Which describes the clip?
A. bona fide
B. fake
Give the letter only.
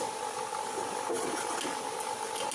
A